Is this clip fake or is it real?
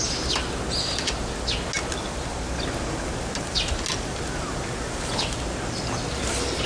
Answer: real